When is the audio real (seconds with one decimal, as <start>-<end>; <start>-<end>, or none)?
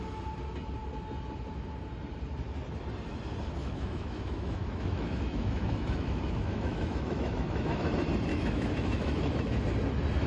0.0-3.6; 7.9-8.3; 9.6-10.3